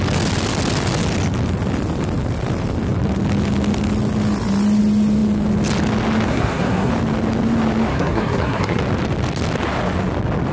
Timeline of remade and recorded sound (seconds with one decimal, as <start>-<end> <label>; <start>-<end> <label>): 0.0-6.3 recorded; 6.3-6.9 remade; 6.9-7.9 recorded; 7.9-8.8 remade; 8.8-10.5 recorded